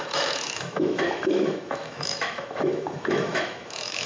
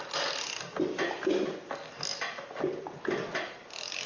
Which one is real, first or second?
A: second